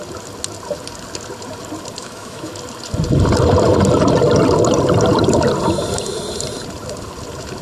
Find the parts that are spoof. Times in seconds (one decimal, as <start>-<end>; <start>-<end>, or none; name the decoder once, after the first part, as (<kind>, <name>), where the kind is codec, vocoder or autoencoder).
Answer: 2.0-2.5 (autoencoder, DAC-VAE)